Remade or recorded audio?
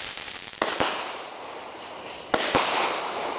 remade